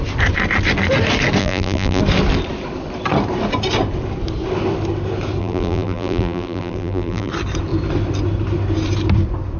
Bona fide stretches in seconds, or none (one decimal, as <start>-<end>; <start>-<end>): 0.0-1.4; 2.0-5.4; 7.3-9.6